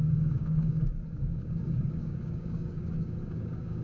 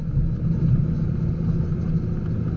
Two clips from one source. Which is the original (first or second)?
second